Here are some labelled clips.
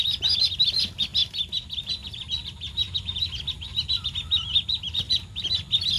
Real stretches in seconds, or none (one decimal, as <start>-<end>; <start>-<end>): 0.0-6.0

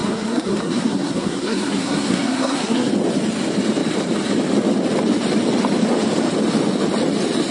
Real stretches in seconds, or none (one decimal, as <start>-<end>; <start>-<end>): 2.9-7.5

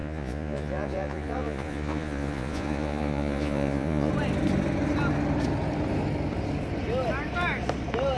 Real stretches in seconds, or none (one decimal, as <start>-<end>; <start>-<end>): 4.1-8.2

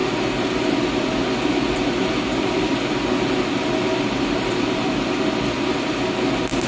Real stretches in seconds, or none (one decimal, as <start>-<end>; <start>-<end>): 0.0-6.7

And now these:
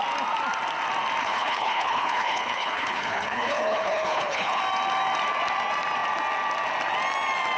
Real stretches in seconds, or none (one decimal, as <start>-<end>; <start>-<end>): 0.0-1.2; 4.6-7.6